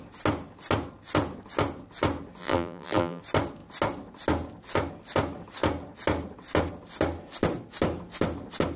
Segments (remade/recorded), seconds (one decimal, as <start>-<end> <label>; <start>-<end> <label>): 0.0-2.4 recorded; 2.4-3.2 remade; 3.2-8.8 recorded